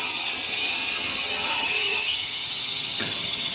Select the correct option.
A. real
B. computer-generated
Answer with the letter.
B